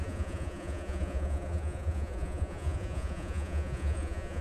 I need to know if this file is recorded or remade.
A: remade